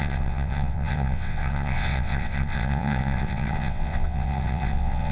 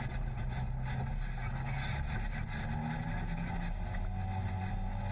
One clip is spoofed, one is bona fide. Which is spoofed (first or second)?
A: first